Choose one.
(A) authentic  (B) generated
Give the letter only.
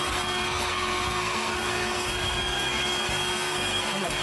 B